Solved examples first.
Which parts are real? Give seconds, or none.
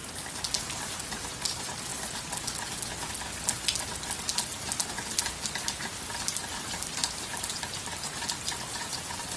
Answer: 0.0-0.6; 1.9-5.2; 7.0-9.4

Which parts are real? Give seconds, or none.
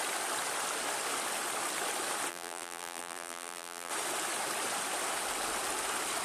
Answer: 0.0-2.3; 3.9-6.2